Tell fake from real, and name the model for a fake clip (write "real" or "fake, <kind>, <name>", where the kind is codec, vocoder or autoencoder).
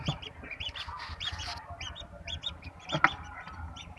real